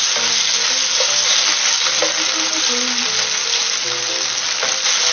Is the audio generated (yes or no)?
no